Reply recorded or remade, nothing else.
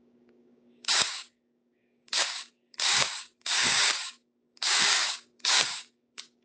remade